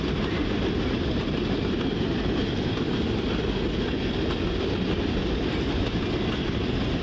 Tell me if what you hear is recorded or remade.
recorded